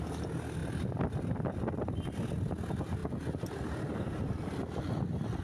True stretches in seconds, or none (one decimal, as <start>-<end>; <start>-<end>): 0.0-5.4